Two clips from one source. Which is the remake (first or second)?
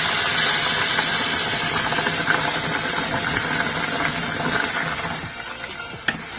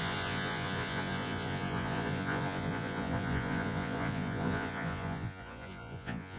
second